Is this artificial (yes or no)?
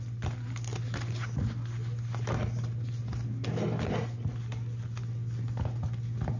no